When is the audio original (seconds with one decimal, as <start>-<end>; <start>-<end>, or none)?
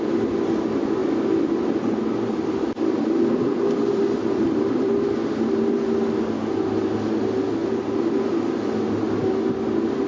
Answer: 0.0-1.0; 5.9-10.1